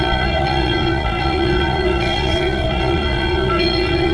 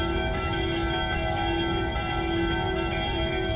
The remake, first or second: first